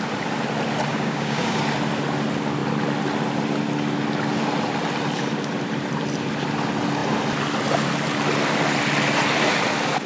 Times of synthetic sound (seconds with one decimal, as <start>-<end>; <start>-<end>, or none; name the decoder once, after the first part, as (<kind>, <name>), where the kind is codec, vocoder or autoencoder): 0.9-1.6 (codec, DAC)